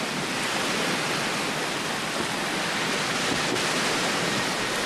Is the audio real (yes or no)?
yes